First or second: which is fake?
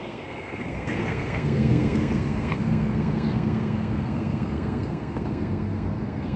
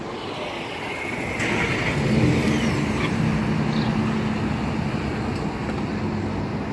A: first